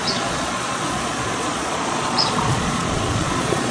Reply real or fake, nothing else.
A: fake